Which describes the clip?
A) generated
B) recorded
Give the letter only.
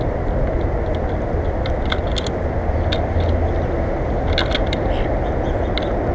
B